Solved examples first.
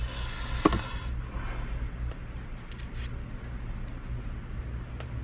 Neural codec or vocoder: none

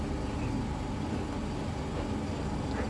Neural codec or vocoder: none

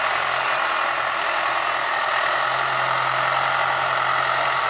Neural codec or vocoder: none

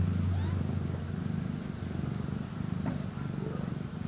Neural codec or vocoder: none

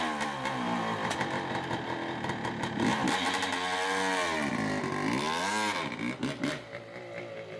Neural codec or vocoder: none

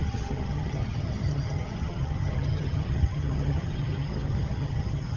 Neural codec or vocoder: vocoder, HiFi-GAN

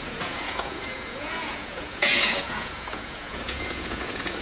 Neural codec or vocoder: vocoder, Vocos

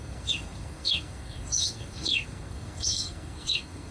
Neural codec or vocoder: codec, SNAC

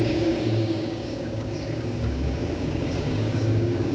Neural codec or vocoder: codec, DAC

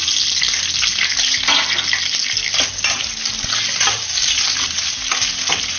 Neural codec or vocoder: none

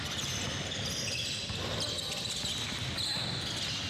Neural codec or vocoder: none